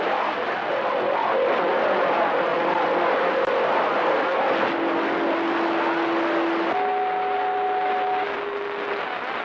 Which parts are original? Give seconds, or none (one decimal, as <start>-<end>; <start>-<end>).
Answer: 0.0-9.4